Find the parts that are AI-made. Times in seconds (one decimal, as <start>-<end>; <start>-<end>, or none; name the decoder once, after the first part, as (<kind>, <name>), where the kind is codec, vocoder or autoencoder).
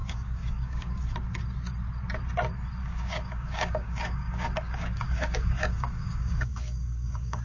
0.0-1.0 (codec, DAC); 2.8-7.4